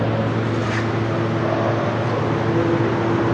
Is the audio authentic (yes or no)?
yes